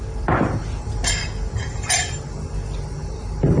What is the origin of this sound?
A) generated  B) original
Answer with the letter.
B